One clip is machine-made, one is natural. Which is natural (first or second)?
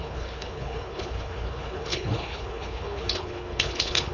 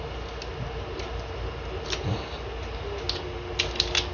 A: second